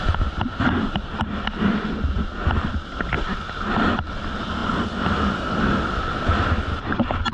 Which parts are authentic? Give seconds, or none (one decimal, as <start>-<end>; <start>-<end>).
0.0-4.6